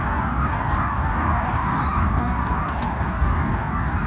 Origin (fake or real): fake